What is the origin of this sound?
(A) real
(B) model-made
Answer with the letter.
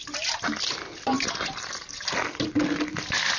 A